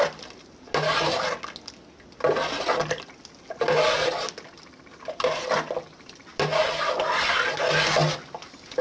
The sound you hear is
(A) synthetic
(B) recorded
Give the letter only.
B